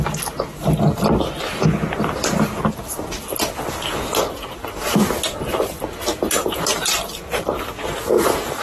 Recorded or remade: recorded